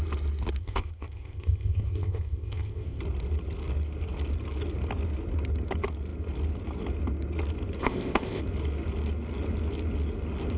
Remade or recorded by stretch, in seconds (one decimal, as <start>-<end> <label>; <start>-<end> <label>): 0.0-0.6 recorded; 0.6-3.0 remade; 3.0-7.8 recorded; 7.8-8.4 remade; 8.4-10.6 recorded